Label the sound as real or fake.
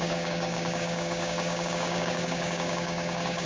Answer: fake